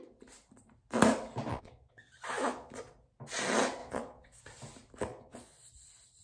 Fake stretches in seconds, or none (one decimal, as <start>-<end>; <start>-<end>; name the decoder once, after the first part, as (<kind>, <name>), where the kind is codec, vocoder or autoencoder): 1.5-2.7 (vocoder, Vocos); 3.8-4.4; 5.1-5.7